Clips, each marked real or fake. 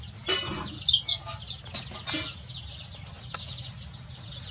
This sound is real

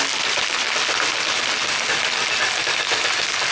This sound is real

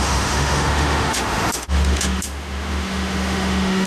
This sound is fake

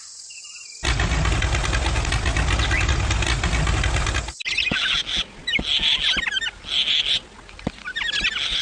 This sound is real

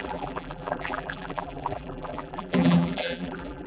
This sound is fake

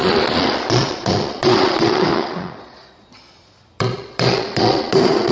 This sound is fake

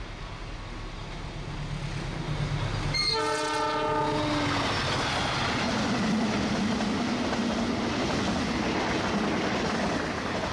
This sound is real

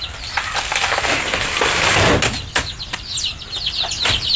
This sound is real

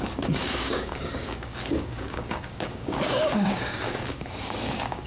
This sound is fake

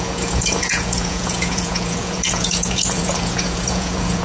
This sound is fake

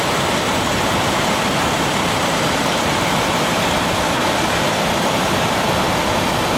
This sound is fake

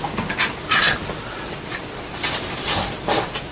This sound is real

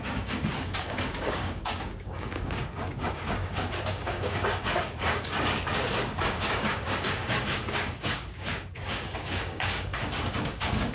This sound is fake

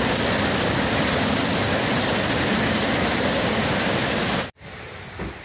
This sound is real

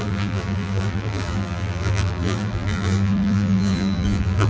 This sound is fake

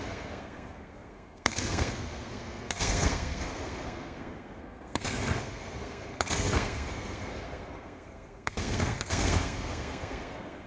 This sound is fake